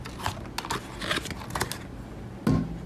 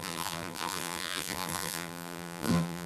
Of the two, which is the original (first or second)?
first